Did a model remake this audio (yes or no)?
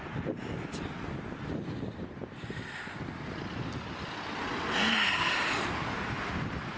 no